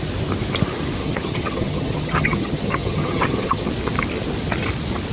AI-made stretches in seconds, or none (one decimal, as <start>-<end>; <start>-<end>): 1.0-3.7